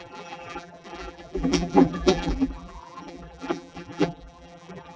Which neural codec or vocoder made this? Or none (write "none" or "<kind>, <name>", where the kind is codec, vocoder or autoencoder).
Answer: vocoder, BigVGAN v2